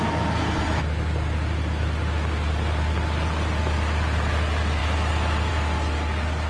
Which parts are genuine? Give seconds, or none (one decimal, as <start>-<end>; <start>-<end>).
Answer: 0.0-6.5